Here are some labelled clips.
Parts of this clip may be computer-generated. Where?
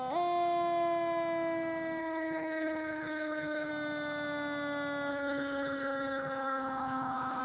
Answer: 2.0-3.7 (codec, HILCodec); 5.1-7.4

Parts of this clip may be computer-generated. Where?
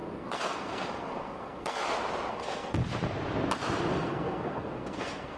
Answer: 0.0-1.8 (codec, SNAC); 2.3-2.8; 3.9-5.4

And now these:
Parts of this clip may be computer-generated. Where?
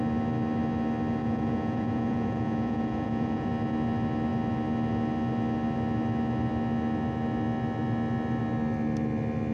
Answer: 1.2-3.5 (vocoder, Vocos)